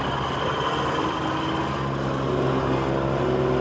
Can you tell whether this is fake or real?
real